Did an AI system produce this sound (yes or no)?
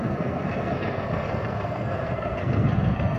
yes